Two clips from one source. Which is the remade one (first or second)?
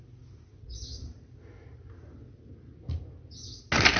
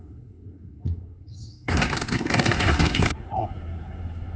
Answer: second